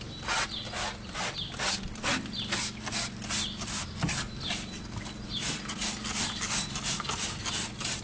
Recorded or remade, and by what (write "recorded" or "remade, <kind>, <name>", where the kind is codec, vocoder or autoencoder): recorded